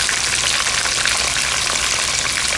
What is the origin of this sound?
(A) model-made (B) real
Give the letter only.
B